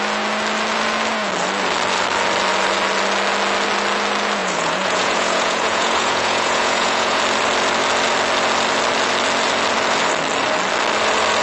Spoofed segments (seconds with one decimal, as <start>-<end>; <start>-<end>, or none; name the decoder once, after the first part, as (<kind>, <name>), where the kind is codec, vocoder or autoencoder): 4.4-7.2 (vocoder, Vocos)